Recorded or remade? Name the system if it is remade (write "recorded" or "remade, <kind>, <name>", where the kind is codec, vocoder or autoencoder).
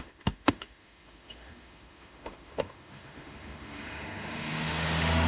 remade, autoencoder, DAC-VAE